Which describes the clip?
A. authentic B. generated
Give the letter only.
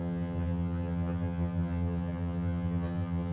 B